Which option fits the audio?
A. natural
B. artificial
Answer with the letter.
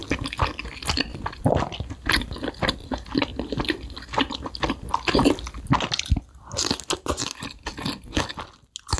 A